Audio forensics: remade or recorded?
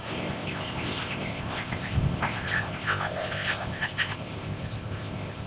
remade